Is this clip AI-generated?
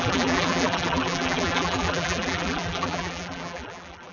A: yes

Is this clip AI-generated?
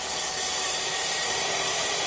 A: yes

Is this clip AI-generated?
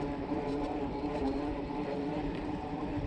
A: yes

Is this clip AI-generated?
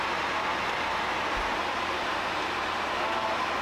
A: no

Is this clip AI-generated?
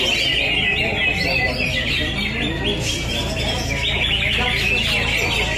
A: no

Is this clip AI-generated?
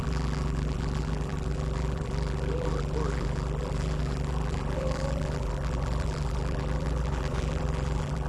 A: yes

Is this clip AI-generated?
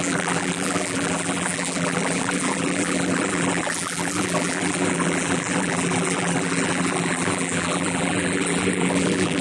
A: yes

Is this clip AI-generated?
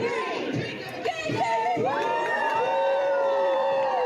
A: yes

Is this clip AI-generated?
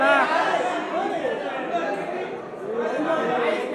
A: no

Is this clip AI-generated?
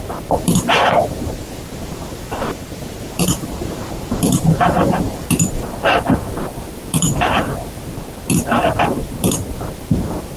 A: yes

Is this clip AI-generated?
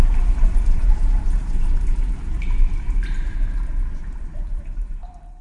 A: yes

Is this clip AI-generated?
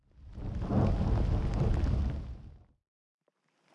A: no